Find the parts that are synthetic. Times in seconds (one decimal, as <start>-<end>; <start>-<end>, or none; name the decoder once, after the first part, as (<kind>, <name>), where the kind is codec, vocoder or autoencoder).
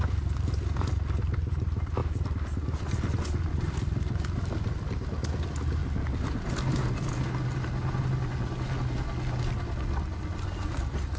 none